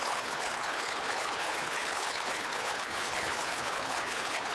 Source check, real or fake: fake